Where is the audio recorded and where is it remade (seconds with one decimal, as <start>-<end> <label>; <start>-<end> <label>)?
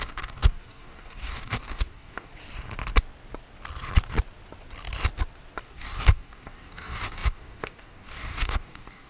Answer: 0.0-2.3 remade; 2.3-5.6 recorded; 5.6-9.1 remade